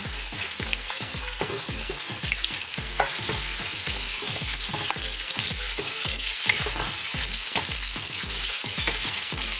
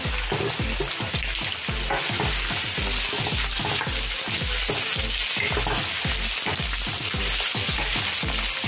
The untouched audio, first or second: second